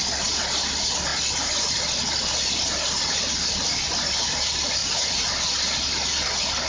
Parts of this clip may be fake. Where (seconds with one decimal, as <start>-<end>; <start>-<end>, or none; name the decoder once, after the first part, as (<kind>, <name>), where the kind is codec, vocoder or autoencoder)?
4.8-5.3 (vocoder, Vocos)